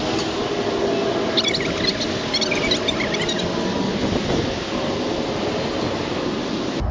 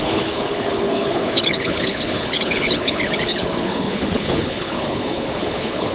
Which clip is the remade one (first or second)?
second